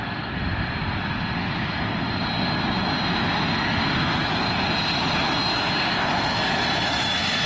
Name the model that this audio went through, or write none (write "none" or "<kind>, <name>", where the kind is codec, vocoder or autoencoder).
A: none